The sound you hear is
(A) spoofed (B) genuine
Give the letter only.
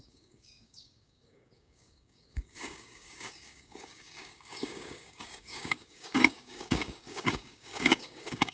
A